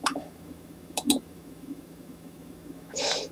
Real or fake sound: fake